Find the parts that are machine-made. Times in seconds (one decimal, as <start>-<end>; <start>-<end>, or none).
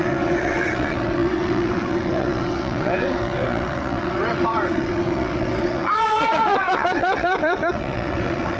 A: 0.0-8.6